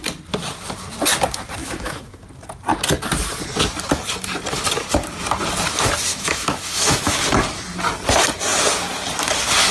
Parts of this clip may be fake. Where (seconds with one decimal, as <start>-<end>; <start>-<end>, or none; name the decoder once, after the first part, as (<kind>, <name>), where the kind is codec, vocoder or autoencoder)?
1.6-2.2 (autoencoder, DAC-VAE); 6.1-7.2